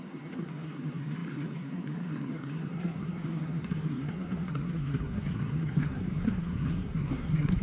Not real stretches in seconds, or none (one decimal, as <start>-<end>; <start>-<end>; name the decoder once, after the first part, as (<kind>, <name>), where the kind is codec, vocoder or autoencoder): 0.0-7.6 (codec, SNAC)